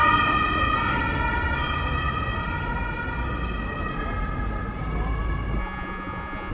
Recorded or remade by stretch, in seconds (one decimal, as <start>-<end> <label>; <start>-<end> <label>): 0.0-5.6 recorded; 5.6-6.5 remade